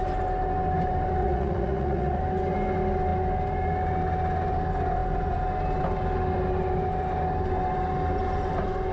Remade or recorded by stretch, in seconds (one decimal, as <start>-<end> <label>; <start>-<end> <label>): 0.0-1.2 recorded; 1.2-2.2 remade; 2.2-8.9 recorded